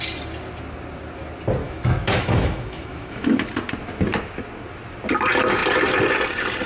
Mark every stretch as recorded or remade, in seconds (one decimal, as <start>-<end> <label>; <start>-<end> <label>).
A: 0.0-1.6 recorded; 1.6-3.5 remade; 3.5-6.7 recorded